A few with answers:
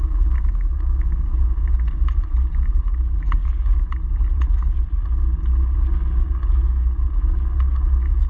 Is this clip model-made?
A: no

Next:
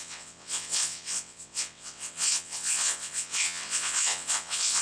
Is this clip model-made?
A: yes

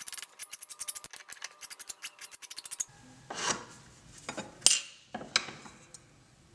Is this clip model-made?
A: no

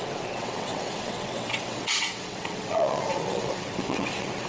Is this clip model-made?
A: yes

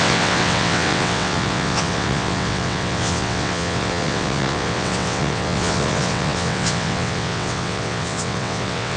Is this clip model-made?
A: yes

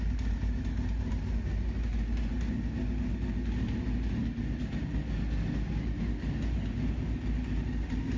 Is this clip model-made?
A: no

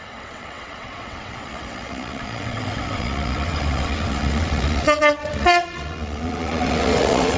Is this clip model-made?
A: yes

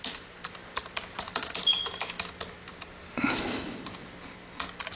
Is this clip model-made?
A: no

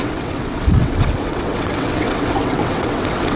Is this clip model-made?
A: yes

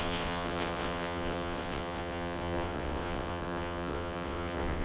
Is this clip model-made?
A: yes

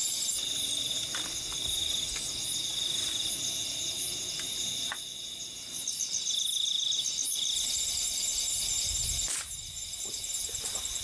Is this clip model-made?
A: no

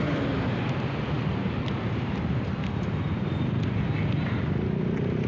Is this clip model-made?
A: no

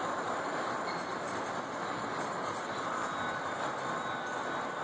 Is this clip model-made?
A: no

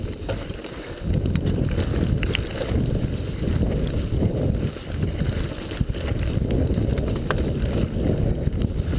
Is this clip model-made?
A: no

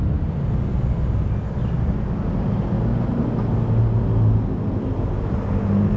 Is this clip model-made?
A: no